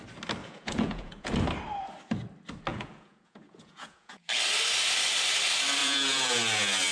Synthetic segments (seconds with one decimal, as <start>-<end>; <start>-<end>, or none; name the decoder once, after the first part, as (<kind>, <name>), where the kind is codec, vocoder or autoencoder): 0.4-1.3 (vocoder, Vocos); 2.7-4.3; 5.8-6.3